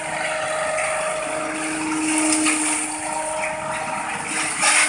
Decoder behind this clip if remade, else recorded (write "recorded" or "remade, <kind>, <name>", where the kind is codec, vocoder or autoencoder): recorded